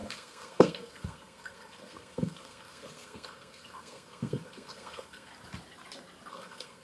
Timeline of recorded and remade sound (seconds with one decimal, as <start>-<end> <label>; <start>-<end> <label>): 0.0-5.3 remade; 5.3-6.3 recorded; 6.3-6.8 remade